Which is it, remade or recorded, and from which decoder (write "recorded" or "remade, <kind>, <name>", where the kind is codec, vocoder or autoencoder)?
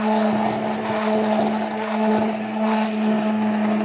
recorded